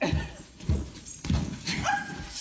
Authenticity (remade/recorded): remade